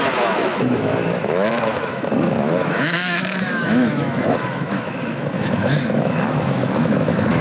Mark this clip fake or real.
fake